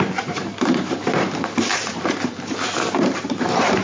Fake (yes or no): yes